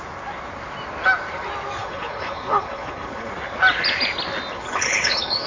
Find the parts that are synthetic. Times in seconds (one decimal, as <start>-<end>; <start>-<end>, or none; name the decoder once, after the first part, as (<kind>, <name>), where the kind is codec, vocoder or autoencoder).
1.8-3.3 (codec, HILCodec); 4.5-5.5